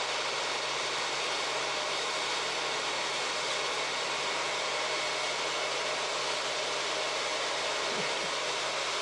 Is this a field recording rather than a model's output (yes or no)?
yes